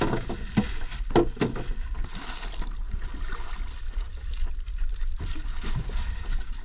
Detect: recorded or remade recorded